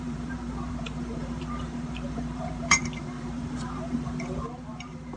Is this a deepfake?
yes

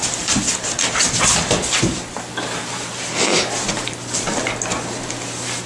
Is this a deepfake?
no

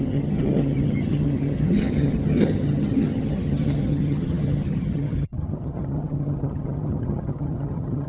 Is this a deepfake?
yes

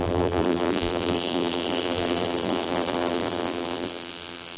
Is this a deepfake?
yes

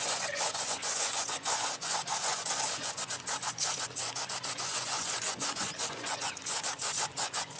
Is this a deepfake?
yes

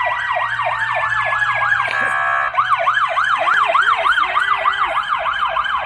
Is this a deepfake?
no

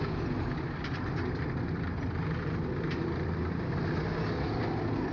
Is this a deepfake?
no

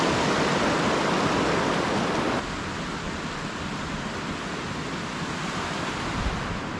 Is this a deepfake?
no